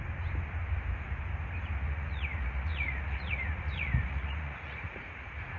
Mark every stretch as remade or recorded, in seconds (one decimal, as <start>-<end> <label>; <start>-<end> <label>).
0.0-1.8 recorded; 1.8-5.6 remade